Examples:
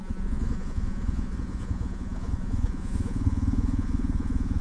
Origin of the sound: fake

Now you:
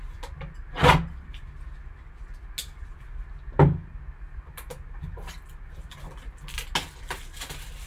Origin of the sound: real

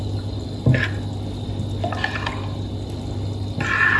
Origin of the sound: real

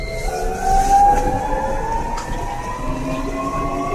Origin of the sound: real